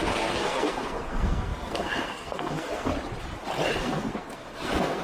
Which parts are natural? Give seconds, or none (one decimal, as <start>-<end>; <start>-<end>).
2.9-3.8